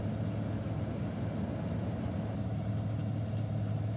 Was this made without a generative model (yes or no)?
yes